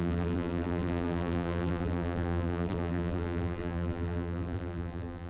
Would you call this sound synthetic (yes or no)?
yes